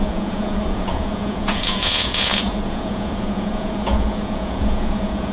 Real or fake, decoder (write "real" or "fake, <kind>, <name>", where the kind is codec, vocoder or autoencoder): fake, vocoder, Vocos